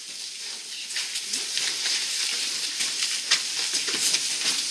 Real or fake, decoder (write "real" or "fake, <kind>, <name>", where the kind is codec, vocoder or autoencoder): real